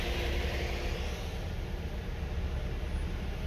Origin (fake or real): real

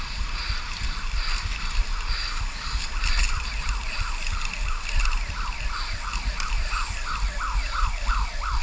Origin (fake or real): real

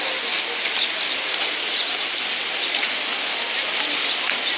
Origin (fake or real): real